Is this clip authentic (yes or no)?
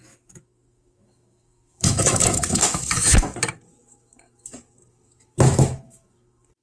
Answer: no